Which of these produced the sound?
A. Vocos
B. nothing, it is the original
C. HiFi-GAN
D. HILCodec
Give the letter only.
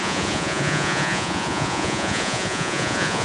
A